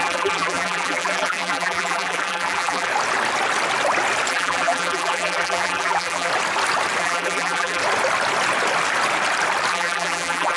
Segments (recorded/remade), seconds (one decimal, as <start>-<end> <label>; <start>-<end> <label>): 0.0-2.9 remade; 2.9-4.3 recorded; 4.3-6.3 remade; 6.3-7.0 recorded; 7.0-7.8 remade; 7.8-9.7 recorded; 9.7-10.6 remade